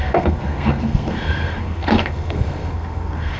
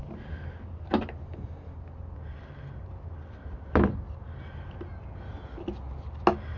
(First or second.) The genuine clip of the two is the second